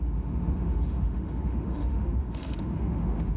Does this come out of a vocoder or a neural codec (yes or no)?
yes